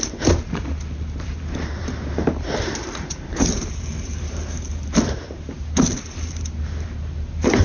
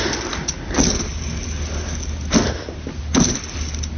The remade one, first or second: first